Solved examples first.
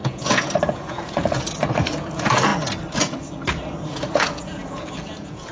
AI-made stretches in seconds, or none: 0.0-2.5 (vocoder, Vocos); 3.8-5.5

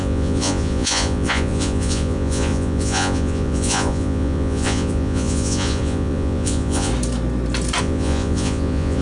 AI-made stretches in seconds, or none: 0.0-6.9 (vocoder, Vocos); 7.8-9.0

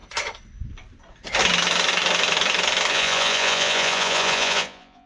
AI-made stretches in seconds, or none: 2.9-5.1 (vocoder, Vocos)

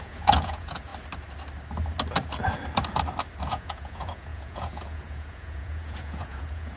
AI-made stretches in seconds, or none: 0.0-0.9 (vocoder, Vocos); 3.4-6.8

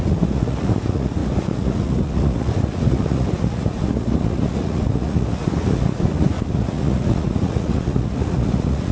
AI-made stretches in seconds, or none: 0.0-8.9 (vocoder, Vocos)

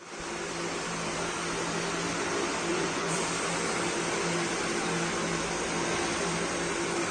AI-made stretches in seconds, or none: 2.7-3.2 (vocoder, Vocos)

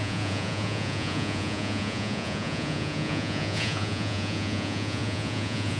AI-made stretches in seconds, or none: 0.0-5.8 (vocoder, Vocos)

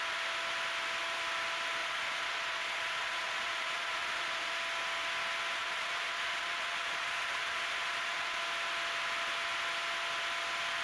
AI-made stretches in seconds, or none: 1.8-4.5 (vocoder, Vocos); 5.6-8.4